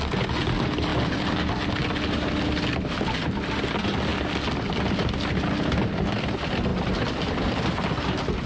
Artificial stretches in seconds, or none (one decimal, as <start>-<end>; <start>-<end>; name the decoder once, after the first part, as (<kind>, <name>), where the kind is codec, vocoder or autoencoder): none